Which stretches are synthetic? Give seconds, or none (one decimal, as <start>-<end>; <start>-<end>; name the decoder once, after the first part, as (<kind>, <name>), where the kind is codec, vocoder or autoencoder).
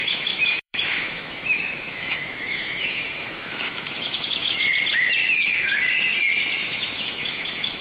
0.0-4.7 (autoencoder, DAC-VAE); 5.2-5.8; 6.6-7.8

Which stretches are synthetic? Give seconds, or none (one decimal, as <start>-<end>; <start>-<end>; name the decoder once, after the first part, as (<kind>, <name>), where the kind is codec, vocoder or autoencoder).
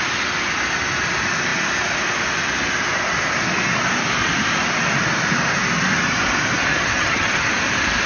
6.7-7.5 (vocoder, HiFi-GAN)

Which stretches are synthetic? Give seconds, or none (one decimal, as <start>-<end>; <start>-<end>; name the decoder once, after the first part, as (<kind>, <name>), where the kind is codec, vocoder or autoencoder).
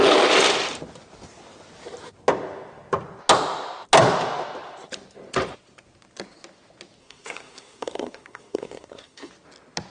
7.0-9.3 (codec, SNAC)